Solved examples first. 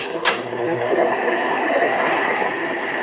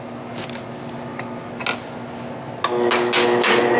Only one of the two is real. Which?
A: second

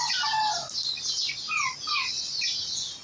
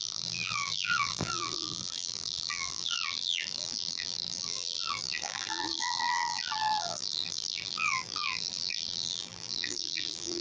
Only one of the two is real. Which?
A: first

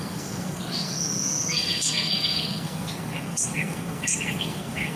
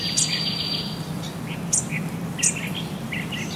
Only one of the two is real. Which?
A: second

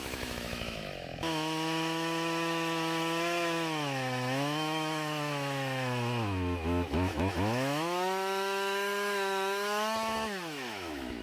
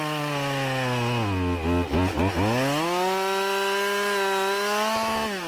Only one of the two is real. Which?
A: second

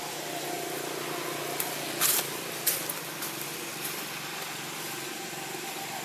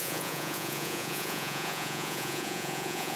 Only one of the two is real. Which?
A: first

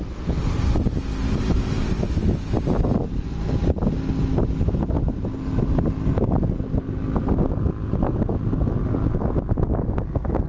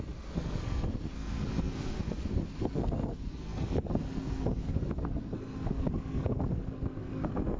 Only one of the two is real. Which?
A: first